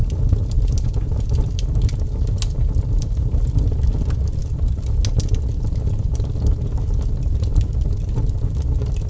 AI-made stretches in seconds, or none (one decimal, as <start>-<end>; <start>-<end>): none